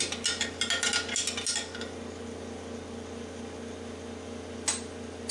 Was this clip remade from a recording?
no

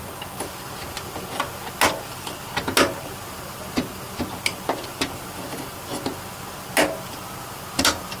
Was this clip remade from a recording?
no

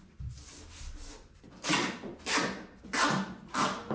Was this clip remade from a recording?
no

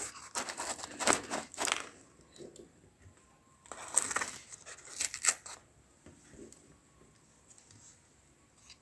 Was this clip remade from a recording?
no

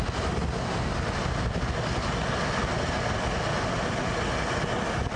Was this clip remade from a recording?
no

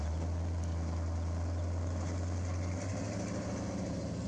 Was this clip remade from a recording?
no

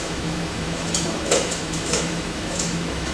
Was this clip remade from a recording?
yes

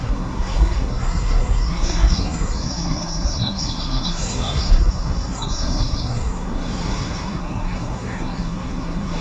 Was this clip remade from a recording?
yes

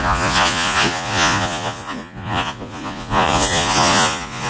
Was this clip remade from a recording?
yes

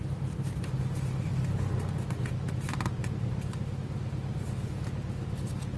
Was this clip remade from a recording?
no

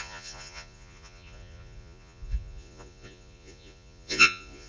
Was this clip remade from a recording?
yes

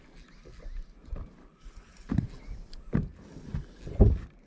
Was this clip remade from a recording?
no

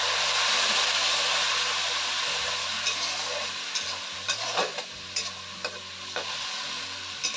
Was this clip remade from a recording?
no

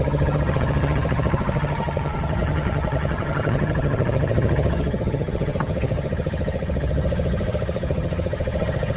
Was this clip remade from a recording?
yes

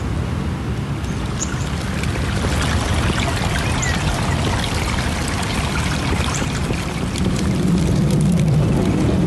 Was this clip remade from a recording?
no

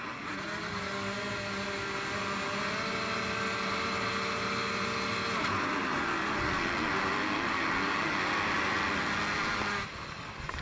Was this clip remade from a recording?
no